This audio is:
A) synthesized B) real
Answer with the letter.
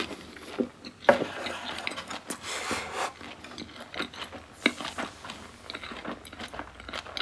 B